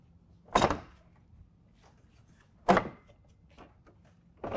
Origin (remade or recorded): recorded